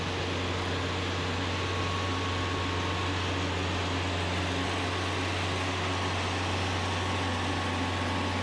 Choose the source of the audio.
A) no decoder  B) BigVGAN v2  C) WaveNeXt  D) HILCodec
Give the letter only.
A